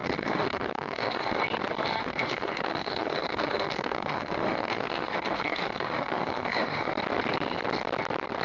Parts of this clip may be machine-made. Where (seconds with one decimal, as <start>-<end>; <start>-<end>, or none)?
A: 0.0-1.4; 2.0-6.9